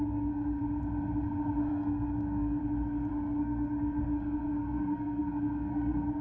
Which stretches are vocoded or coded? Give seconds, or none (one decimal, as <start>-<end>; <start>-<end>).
0.0-0.6; 1.7-2.6; 3.1-6.2

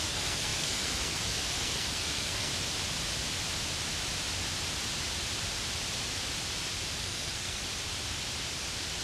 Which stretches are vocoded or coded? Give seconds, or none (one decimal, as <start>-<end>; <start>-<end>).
0.0-2.5; 7.0-7.6

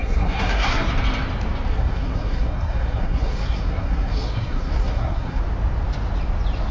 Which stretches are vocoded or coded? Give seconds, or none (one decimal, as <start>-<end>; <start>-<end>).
0.0-0.9; 1.7-5.4

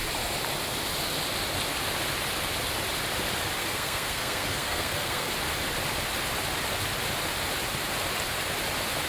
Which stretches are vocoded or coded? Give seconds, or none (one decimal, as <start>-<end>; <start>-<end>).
3.6-5.3

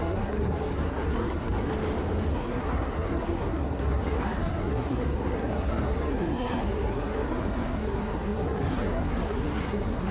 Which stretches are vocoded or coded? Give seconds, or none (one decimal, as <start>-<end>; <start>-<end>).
0.0-1.7; 2.3-10.1

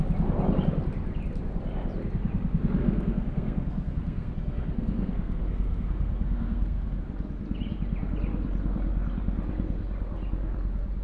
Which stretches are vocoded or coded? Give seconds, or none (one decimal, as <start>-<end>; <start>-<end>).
2.8-7.0

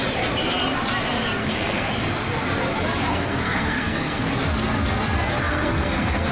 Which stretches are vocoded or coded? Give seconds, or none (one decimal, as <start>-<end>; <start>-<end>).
1.4-1.9; 3.1-4.3; 5.4-6.3

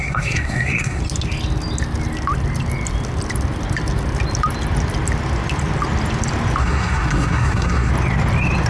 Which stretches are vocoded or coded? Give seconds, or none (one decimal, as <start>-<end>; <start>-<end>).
0.0-1.0; 6.6-7.9